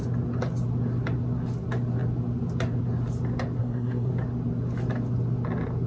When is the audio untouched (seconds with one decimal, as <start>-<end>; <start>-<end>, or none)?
0.0-3.6; 4.1-5.9